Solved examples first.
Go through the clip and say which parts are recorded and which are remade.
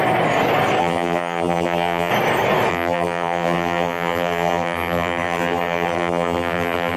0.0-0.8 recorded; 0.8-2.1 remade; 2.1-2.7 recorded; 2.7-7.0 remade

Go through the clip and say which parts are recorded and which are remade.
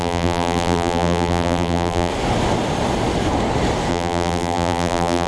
0.0-2.1 remade; 2.1-3.9 recorded; 3.9-5.3 remade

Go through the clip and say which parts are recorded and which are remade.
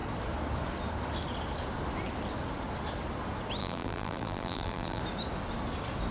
0.0-3.6 recorded; 3.6-5.0 remade; 5.0-6.1 recorded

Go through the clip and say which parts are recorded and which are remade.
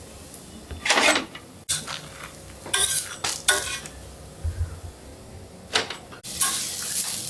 0.0-7.3 recorded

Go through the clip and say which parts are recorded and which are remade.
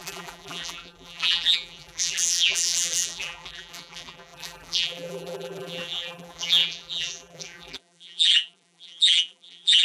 0.0-9.8 remade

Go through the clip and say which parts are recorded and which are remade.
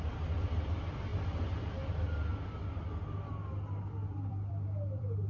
0.0-1.1 remade; 1.1-1.6 recorded; 1.6-2.3 remade; 2.3-3.9 recorded; 3.9-5.3 remade